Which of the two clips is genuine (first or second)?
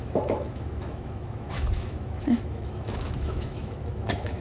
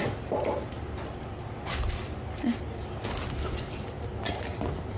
second